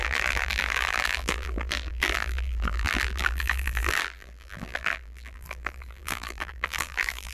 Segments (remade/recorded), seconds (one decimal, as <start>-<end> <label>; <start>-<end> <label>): 0.0-7.3 remade